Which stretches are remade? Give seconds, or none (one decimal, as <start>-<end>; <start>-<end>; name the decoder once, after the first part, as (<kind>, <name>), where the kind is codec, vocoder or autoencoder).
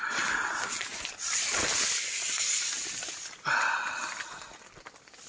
none